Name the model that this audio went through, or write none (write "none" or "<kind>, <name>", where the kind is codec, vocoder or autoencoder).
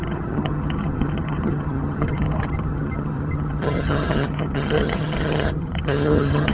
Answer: vocoder, HiFi-GAN